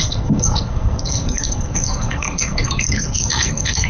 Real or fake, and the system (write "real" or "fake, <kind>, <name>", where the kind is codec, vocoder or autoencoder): fake, codec, SNAC